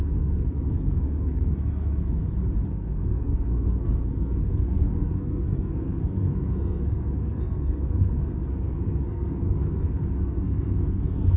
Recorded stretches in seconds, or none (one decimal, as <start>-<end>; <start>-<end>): 2.2-2.7